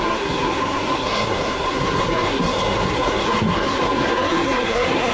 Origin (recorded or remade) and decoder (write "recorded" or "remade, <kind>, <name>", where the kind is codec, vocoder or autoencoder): remade, codec, SNAC